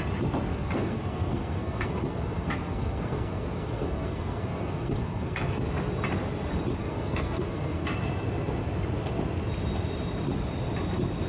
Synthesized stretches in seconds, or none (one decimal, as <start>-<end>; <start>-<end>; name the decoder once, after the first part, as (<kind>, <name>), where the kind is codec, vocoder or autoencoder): 0.5-5.6 (codec, SNAC); 6.8-8.0